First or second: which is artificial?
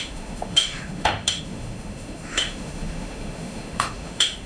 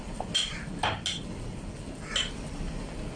first